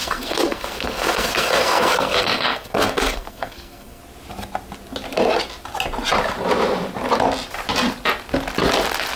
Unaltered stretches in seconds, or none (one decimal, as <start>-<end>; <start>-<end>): 4.0-9.2